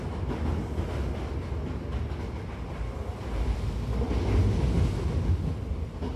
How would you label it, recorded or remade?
recorded